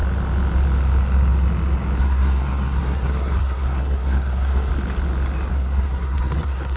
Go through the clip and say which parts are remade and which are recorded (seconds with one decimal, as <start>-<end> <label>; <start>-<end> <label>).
0.0-2.0 recorded; 2.0-4.7 remade; 4.7-5.5 recorded; 5.5-6.8 remade